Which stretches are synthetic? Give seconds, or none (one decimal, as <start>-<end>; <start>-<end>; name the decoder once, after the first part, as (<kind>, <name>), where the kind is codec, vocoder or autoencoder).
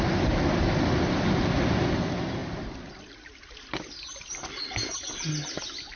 none